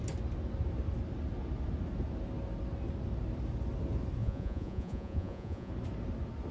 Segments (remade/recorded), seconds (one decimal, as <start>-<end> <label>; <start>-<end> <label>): 0.0-4.2 recorded; 4.2-5.7 remade; 5.7-6.5 recorded